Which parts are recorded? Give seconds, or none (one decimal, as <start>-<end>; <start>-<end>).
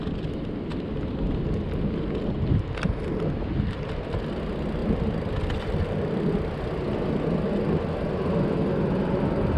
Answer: 0.0-4.8; 6.4-9.6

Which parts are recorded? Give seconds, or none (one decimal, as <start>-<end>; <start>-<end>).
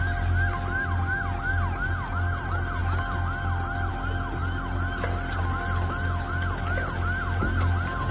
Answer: 0.0-8.1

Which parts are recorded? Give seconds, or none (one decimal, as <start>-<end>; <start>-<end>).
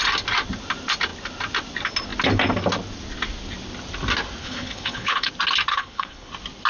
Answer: 0.0-4.4; 5.3-5.7; 6.3-6.7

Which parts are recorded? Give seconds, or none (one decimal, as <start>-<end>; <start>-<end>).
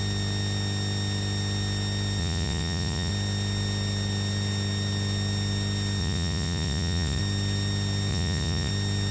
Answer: 0.0-2.2; 3.1-6.0; 7.2-8.1; 8.7-9.1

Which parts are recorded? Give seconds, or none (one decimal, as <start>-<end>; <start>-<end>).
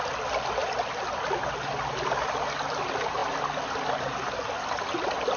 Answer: 0.0-5.4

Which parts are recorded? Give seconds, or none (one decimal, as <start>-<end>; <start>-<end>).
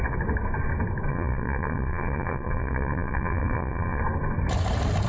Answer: 0.0-1.1; 4.0-5.1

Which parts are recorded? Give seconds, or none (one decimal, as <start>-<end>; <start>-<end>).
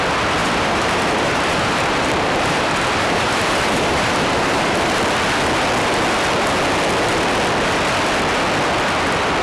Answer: 0.0-0.4; 5.0-9.4